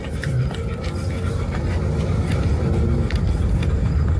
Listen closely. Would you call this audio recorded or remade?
recorded